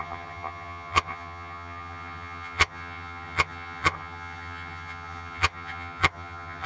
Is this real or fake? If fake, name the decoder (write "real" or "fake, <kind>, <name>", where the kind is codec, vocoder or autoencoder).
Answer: fake, vocoder, HiFi-GAN